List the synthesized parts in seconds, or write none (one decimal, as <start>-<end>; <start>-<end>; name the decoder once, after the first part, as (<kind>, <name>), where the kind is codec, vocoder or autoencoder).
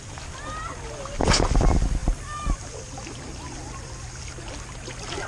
none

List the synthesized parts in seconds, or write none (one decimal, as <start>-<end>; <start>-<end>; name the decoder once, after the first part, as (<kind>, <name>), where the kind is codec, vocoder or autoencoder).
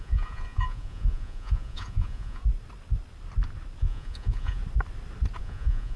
0.0-2.4 (vocoder, Vocos); 3.8-4.6; 5.4-6.0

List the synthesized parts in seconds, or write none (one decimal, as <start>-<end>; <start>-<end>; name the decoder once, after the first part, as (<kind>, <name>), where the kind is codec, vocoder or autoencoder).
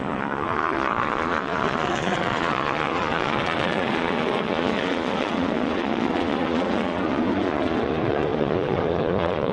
0.0-9.5 (vocoder, Vocos)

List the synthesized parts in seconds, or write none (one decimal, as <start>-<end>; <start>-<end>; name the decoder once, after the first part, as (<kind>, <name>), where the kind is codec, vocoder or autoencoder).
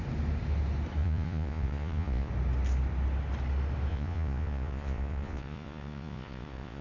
1.0-2.3 (vocoder, Vocos); 3.9-6.8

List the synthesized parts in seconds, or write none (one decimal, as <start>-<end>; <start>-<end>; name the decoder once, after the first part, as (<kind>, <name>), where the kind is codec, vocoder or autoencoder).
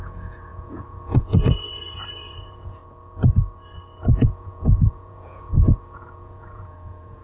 0.0-2.8 (vocoder, Vocos); 4.0-7.2